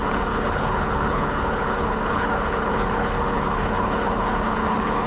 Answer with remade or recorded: remade